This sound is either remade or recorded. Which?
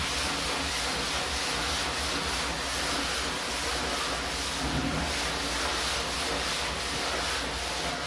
recorded